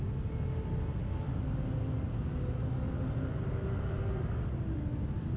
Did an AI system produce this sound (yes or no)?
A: no